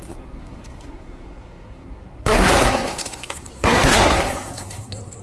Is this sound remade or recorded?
remade